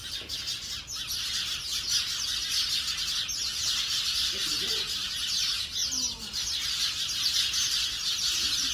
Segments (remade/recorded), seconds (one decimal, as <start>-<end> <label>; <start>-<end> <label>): 0.0-8.7 recorded